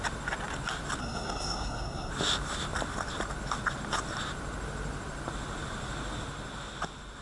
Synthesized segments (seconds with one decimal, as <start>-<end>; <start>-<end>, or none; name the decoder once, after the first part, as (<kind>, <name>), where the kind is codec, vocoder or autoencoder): 1.0-2.1 (codec, SNAC)